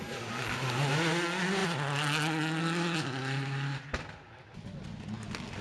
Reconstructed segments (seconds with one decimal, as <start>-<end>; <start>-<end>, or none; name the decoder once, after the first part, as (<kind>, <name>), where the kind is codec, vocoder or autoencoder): none